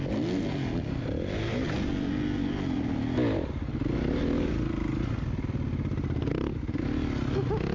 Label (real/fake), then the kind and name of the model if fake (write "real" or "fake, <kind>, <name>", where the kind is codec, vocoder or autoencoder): real